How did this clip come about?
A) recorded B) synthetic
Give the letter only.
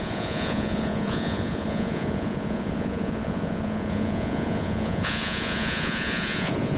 B